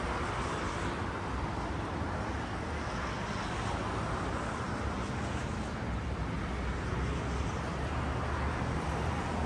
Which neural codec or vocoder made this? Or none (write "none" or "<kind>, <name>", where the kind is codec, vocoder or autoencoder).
none